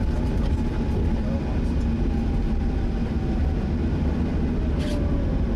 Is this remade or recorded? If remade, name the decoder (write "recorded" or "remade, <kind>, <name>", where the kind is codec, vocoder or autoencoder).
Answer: recorded